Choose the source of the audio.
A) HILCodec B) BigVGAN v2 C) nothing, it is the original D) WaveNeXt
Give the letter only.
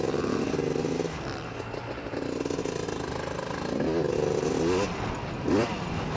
C